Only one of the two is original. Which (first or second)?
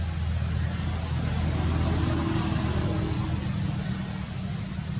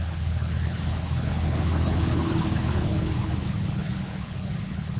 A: first